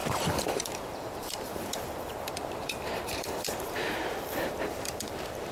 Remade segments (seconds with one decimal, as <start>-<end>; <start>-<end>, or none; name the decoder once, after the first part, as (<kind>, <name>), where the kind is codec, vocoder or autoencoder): 0.0-5.5 (vocoder, BigVGAN v2)